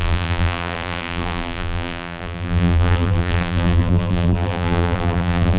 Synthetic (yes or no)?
yes